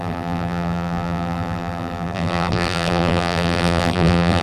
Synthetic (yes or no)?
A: yes